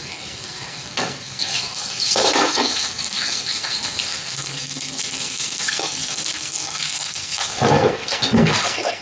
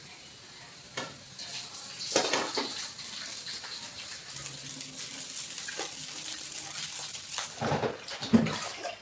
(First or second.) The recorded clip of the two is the second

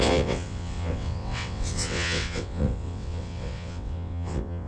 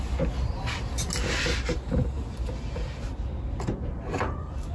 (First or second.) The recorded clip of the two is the second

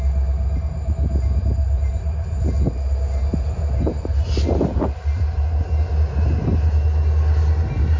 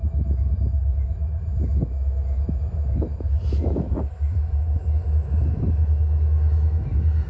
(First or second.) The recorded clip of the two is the first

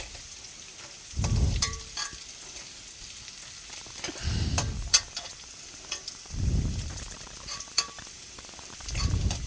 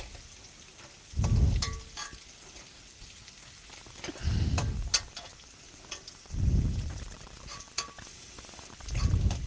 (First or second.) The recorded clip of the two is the second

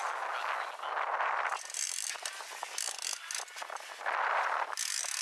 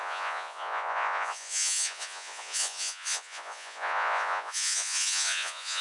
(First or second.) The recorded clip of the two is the first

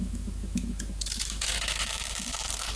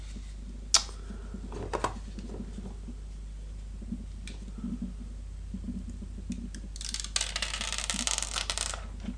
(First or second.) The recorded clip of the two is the second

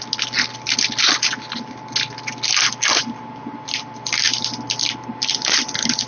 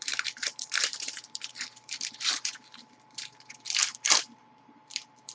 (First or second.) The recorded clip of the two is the first